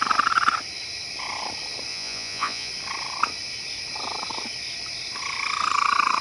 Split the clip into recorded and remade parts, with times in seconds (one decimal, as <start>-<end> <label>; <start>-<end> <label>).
0.0-1.9 recorded; 1.9-2.7 remade; 2.7-6.2 recorded

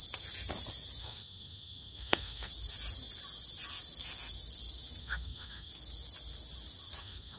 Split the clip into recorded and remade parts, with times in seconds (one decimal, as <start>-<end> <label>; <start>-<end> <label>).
0.0-1.0 recorded; 1.0-2.5 remade; 2.5-5.0 recorded; 5.0-5.7 remade; 5.7-7.0 recorded; 7.0-7.4 remade

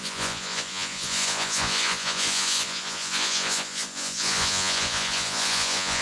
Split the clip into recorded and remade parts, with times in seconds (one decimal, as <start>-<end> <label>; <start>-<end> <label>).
0.0-6.0 remade

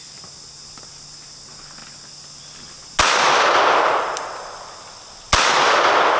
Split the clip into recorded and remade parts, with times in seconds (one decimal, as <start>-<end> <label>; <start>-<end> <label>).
0.0-6.2 recorded